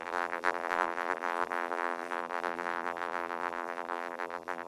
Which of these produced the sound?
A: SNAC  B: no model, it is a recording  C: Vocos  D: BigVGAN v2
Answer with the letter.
D